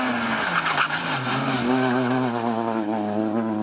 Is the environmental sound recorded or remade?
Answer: recorded